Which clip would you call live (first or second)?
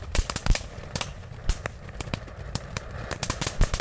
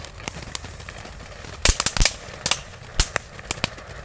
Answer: second